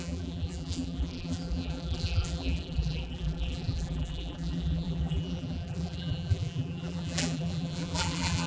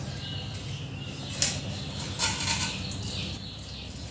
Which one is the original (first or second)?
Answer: second